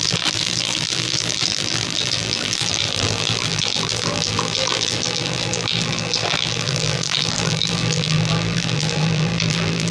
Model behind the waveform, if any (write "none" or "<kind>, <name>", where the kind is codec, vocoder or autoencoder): vocoder, BigVGAN v2